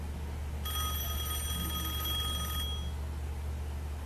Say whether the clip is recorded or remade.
recorded